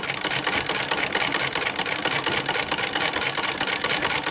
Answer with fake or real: real